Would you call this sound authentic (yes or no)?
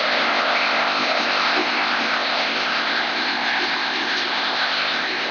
no